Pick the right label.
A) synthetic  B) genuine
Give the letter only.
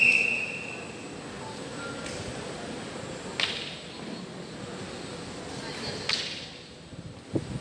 B